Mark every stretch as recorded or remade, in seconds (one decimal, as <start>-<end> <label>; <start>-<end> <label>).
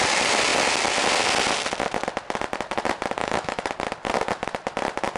0.0-3.2 recorded; 3.2-3.7 remade; 3.7-5.2 recorded